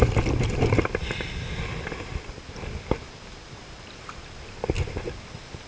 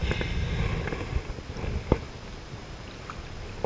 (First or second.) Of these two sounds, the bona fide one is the second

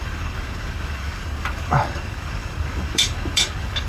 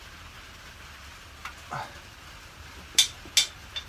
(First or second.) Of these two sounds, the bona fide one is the second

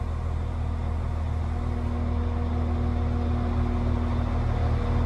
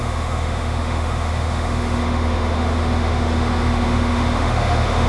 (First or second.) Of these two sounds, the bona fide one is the first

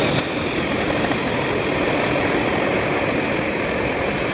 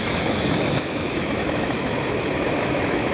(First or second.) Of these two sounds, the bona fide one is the first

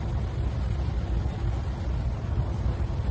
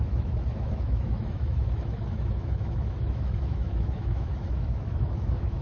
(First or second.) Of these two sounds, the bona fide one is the first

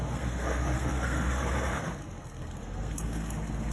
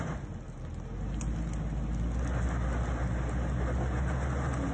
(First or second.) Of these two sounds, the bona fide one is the second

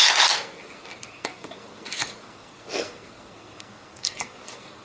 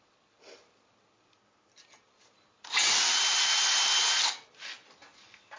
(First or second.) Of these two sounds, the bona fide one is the second